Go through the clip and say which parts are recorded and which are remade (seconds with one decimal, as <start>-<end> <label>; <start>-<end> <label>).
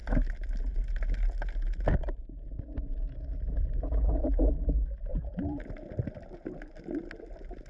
0.0-5.1 recorded; 5.1-7.7 remade